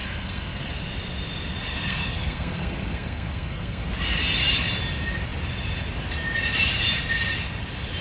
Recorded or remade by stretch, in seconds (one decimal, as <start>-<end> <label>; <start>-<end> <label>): 0.0-0.7 remade; 0.7-1.7 recorded; 1.7-3.9 remade; 3.9-8.0 recorded